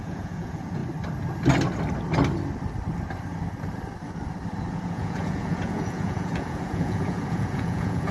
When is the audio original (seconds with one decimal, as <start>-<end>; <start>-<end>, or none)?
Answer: 0.8-4.7